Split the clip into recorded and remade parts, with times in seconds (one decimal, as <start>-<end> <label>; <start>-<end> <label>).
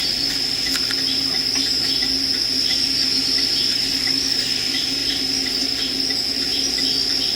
0.0-3.7 recorded; 3.7-4.5 remade; 4.5-7.4 recorded